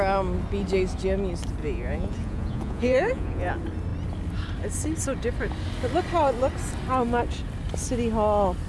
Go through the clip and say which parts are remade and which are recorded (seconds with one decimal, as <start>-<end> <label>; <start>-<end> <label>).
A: 0.0-1.6 recorded; 1.6-3.5 remade; 3.5-8.7 recorded